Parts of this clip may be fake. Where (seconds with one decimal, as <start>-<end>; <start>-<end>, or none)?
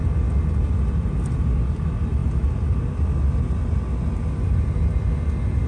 none